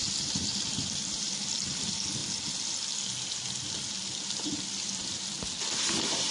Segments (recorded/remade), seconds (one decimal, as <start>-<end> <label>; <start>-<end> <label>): 0.0-2.2 remade; 2.2-5.8 recorded; 5.8-6.3 remade